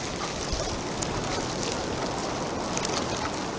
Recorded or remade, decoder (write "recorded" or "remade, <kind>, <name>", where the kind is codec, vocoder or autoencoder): recorded